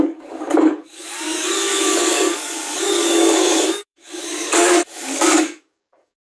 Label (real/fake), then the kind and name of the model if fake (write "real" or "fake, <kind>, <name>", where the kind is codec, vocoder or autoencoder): fake, codec, DAC